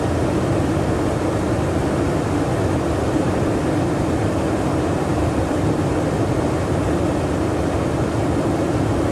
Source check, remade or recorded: recorded